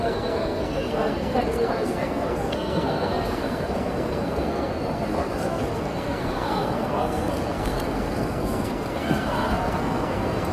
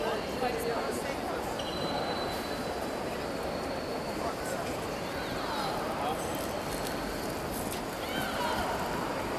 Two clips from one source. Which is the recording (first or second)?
second